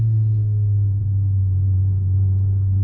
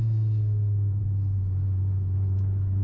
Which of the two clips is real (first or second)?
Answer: second